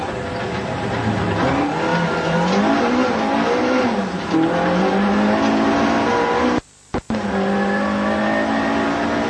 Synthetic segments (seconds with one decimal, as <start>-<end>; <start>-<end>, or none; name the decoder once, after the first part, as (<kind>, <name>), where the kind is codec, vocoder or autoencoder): none